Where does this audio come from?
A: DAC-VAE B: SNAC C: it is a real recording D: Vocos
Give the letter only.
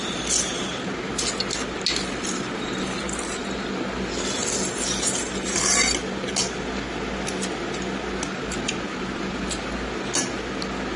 C